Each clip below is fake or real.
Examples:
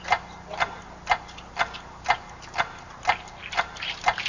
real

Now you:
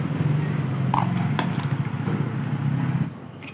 real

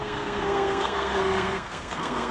fake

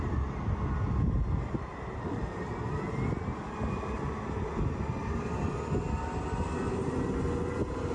real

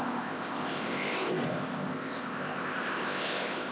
fake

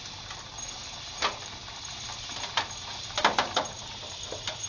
fake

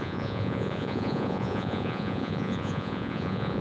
fake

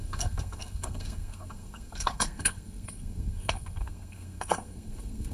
fake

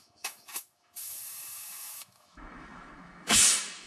fake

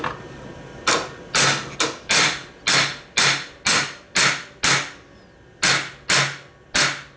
real